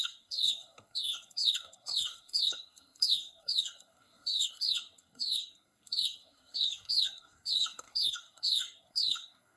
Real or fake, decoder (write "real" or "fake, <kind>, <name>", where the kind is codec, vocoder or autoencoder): fake, codec, SNAC